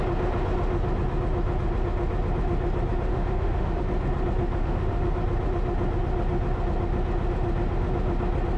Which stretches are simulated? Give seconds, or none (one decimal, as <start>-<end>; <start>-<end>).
3.1-3.8; 4.6-5.1